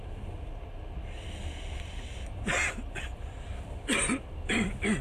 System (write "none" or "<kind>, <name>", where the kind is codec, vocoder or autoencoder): none